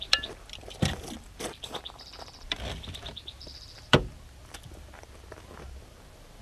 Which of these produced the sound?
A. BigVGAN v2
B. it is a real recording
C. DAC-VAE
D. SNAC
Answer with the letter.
A